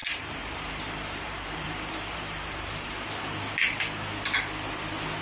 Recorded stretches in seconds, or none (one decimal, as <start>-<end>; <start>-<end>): 3.1-5.2